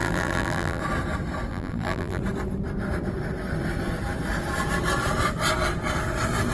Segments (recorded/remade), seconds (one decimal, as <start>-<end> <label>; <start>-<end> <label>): 0.0-0.8 remade; 0.8-1.5 recorded; 1.5-2.2 remade; 2.2-6.5 recorded